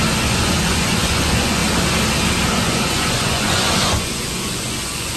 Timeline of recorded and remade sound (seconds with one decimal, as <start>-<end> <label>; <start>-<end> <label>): 0.0-1.6 remade; 1.6-2.5 recorded; 2.5-5.2 remade